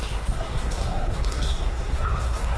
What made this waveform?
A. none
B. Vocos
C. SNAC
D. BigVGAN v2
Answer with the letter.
C